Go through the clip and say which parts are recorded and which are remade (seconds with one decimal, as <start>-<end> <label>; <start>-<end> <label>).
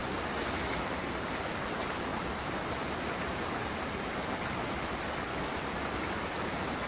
0.0-0.7 recorded; 0.7-2.1 remade; 2.1-2.9 recorded; 2.9-5.3 remade; 5.3-6.1 recorded; 6.1-6.9 remade